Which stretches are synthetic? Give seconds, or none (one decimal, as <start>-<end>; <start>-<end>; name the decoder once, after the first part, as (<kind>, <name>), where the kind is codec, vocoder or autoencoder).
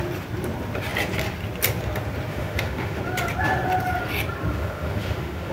2.3-3.0 (autoencoder, DAC-VAE); 4.5-5.5